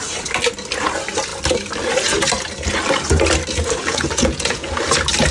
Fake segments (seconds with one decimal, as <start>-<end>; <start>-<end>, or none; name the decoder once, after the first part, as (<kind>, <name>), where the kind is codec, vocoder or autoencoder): 3.8-4.7 (vocoder, Vocos)